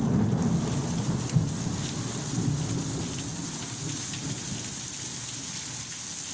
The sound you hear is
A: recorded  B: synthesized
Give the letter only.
A